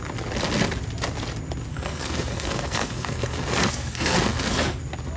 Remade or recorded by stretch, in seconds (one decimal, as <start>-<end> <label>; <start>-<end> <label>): 0.0-1.7 recorded; 1.7-4.8 remade; 4.8-5.2 recorded